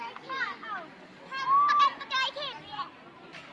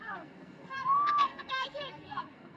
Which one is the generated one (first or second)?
second